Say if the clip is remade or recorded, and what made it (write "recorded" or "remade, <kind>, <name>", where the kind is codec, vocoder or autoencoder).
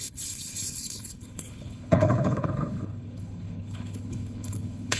remade, codec, HILCodec